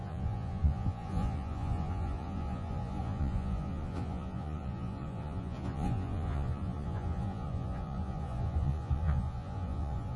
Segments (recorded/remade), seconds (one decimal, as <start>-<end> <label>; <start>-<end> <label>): 0.0-10.2 remade